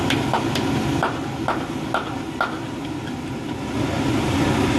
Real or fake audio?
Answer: real